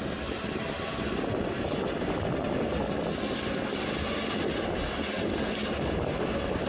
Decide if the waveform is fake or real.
real